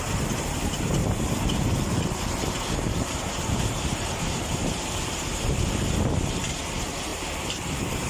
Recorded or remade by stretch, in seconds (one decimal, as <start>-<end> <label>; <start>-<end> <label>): 0.0-1.0 recorded; 1.0-5.6 remade; 5.6-7.1 recorded; 7.1-8.1 remade